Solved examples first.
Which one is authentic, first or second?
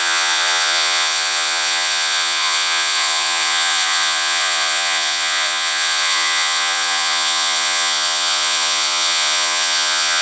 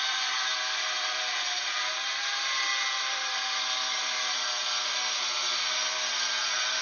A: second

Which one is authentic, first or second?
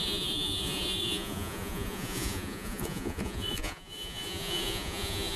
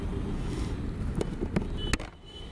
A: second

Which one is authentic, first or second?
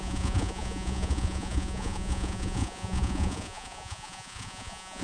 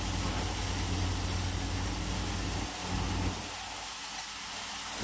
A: second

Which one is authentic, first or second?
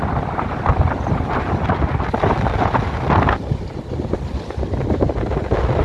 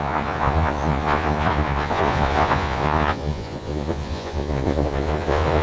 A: first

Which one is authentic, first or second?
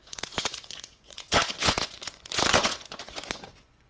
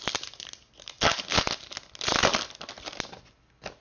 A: second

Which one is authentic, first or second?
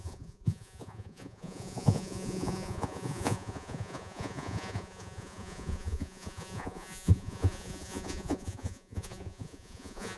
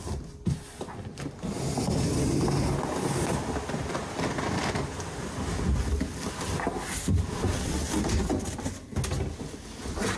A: second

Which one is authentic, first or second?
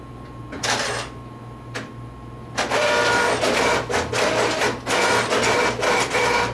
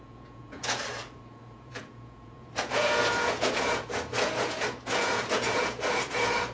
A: first